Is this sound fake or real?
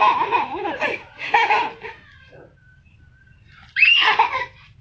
fake